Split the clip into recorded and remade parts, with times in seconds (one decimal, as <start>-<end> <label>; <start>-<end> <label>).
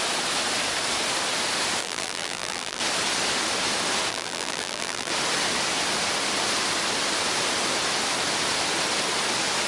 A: 0.0-1.8 recorded; 1.8-2.8 remade; 2.8-4.1 recorded; 4.1-5.1 remade; 5.1-9.7 recorded